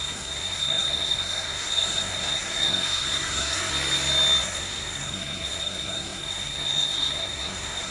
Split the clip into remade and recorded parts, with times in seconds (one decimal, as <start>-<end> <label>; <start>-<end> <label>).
0.0-3.7 remade; 3.7-4.4 recorded; 4.4-7.9 remade